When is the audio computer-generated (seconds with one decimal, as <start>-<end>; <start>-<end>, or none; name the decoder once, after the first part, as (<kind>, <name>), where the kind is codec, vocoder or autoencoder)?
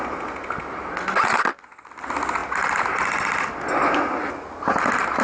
none